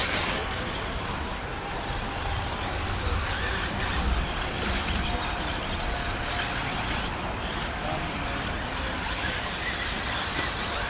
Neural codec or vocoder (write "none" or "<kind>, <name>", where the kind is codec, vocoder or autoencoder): none